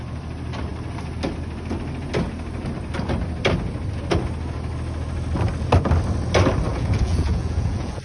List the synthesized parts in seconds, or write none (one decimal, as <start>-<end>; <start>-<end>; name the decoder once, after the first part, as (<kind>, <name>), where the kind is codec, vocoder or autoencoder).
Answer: 6.7-8.0 (vocoder, Vocos)